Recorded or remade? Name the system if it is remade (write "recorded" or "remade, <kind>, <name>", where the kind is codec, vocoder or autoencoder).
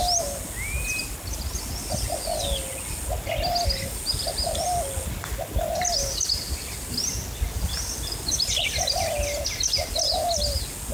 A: recorded